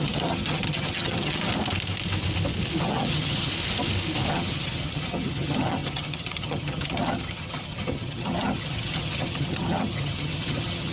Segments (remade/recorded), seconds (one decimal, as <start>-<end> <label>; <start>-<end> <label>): 0.0-1.5 remade; 1.5-2.8 recorded; 2.8-3.5 remade; 3.5-4.3 recorded; 4.3-10.9 remade